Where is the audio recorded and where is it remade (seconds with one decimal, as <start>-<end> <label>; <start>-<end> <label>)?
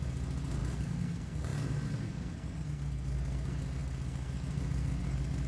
0.0-5.5 remade